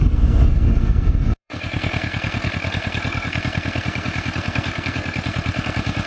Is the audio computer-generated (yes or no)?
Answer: yes